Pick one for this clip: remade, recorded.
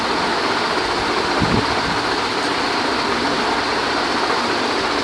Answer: recorded